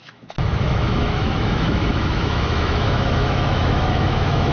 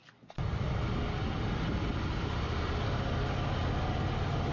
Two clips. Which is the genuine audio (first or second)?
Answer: second